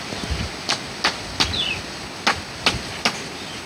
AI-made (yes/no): no